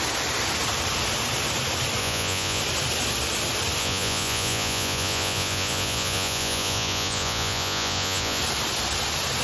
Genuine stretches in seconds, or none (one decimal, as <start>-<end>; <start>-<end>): 0.0-2.0; 2.6-3.8; 8.4-9.4